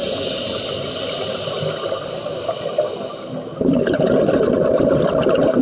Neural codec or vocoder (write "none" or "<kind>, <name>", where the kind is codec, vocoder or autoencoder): none